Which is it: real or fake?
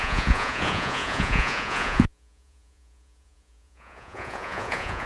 fake